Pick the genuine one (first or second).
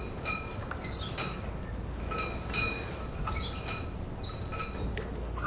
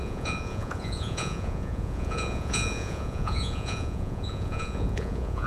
first